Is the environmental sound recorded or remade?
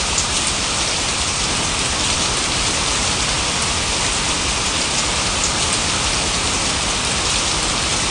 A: recorded